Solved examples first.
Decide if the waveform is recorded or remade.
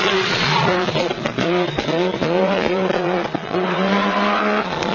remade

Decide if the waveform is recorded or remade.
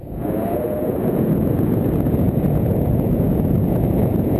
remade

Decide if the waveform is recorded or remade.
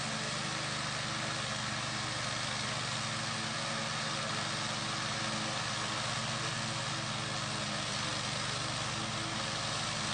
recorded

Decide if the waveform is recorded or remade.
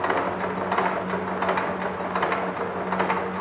recorded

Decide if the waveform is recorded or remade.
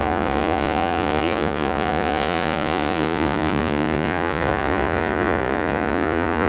remade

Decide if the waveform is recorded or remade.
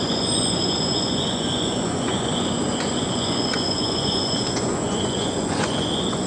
remade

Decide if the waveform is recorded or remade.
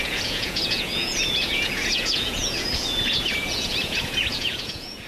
remade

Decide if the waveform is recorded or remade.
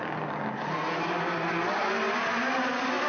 recorded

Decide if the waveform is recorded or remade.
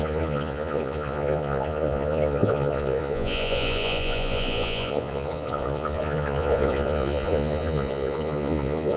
remade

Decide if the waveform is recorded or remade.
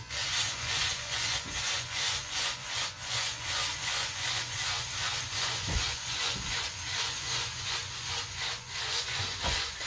remade